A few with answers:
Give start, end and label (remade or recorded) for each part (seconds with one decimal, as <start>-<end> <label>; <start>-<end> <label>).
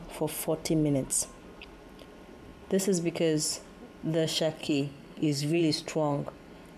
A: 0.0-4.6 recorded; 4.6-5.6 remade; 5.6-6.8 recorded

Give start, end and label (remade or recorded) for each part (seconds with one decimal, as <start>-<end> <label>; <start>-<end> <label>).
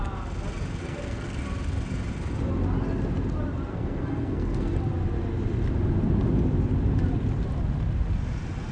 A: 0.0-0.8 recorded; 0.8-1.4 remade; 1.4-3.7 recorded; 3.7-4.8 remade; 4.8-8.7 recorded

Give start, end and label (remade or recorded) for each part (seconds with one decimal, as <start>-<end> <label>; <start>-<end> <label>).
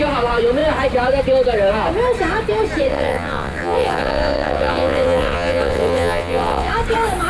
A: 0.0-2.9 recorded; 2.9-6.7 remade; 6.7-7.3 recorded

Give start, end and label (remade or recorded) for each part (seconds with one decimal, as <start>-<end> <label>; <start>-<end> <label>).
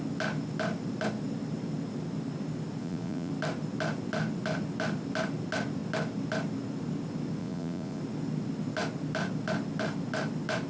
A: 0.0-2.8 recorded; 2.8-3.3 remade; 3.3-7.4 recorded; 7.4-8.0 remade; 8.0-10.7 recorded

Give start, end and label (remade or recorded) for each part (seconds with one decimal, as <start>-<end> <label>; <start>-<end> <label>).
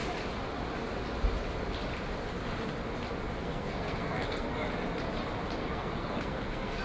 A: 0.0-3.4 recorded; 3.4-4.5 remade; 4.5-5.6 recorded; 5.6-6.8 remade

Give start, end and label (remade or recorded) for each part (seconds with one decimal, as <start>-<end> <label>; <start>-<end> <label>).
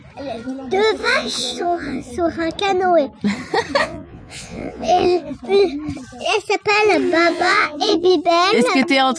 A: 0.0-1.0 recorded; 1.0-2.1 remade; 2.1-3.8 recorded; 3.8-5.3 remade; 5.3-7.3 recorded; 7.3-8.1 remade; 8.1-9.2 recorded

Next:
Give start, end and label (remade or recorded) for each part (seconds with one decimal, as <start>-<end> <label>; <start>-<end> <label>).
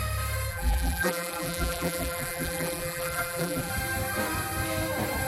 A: 0.0-0.5 recorded; 0.5-3.7 remade; 3.7-5.3 recorded